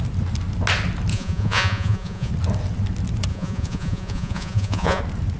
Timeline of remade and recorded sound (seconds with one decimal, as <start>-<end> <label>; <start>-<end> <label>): 0.0-1.1 recorded; 1.1-2.3 remade; 2.3-3.3 recorded; 3.3-5.0 remade; 5.0-5.4 recorded